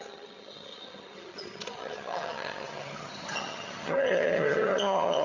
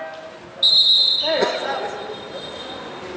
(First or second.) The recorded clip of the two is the second